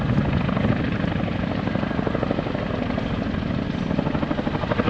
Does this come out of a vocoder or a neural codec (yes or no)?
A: no